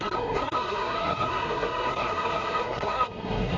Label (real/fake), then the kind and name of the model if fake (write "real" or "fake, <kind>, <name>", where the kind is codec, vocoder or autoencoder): fake, codec, SNAC